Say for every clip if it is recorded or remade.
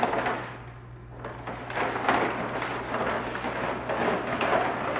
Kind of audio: recorded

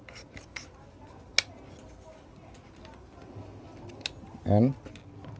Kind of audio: recorded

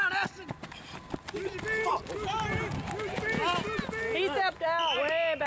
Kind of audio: recorded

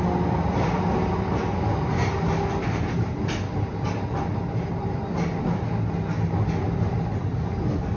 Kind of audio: recorded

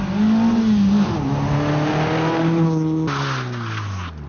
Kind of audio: recorded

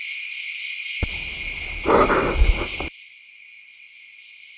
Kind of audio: recorded